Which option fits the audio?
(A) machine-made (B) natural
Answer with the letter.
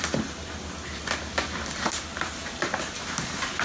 B